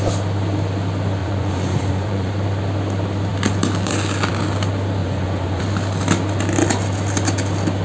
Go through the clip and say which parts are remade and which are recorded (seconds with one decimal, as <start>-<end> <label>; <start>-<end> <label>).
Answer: 0.0-1.2 recorded; 1.2-2.3 remade; 2.3-5.0 recorded; 5.0-5.6 remade; 5.6-7.8 recorded